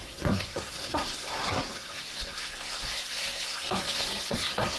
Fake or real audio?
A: fake